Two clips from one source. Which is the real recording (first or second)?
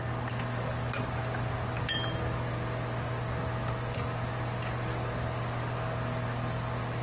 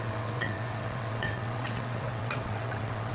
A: first